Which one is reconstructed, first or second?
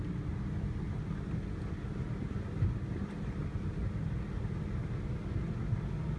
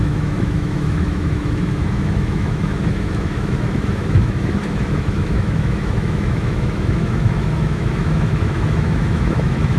second